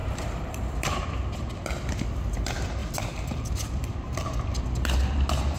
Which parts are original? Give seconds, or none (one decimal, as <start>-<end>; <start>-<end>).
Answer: 1.0-2.8; 3.6-5.6